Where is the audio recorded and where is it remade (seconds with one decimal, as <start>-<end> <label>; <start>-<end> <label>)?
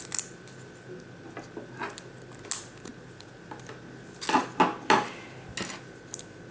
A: 0.0-6.5 recorded